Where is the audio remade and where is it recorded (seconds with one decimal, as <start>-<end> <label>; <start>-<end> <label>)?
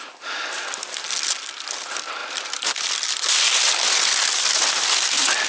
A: 0.0-2.2 recorded; 2.2-5.5 remade